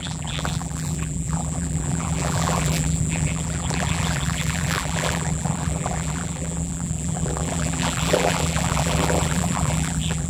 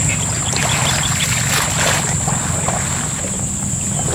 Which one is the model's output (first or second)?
first